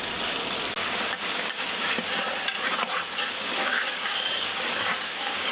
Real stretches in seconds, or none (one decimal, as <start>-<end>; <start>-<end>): 0.0-0.8; 1.9-3.6